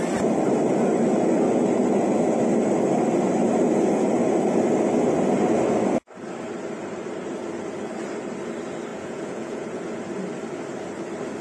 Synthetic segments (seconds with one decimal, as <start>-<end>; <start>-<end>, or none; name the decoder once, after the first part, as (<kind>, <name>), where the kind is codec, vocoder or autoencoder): 8.9-9.8 (vocoder, Vocos)